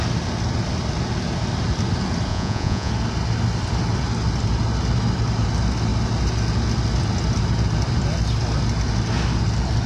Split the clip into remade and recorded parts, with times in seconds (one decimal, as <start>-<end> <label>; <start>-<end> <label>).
0.0-2.3 recorded; 2.3-2.9 remade; 2.9-9.9 recorded